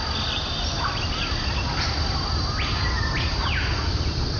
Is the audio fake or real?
real